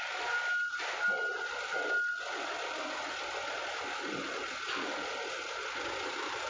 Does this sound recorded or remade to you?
recorded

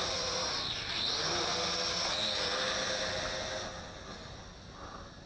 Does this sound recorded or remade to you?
recorded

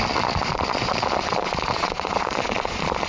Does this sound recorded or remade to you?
remade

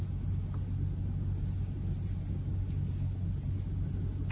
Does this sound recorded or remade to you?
recorded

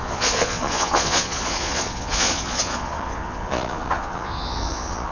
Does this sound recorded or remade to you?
remade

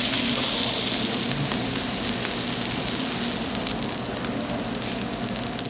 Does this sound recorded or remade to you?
recorded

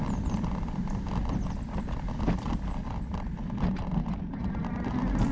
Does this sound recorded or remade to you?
recorded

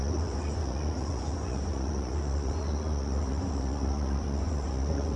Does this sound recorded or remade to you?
remade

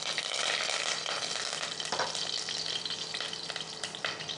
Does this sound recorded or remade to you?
recorded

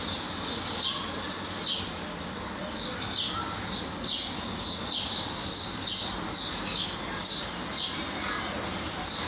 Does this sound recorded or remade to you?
recorded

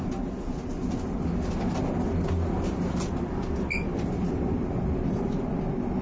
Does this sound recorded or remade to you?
recorded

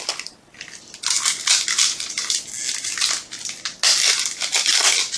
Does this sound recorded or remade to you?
recorded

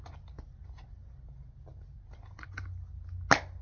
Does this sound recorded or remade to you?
recorded